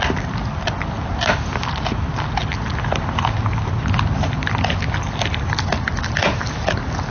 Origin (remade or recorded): recorded